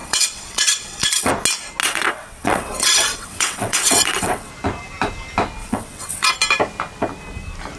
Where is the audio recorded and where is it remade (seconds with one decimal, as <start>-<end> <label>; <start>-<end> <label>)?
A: 0.0-1.3 remade; 1.3-1.8 recorded; 1.8-4.5 remade; 4.5-5.6 recorded; 5.6-6.3 remade; 6.3-7.8 recorded